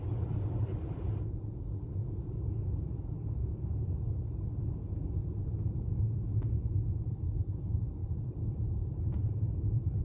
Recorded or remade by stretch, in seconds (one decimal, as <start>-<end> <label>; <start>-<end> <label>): 0.0-3.4 recorded; 3.4-4.4 remade; 4.4-8.0 recorded; 8.0-10.0 remade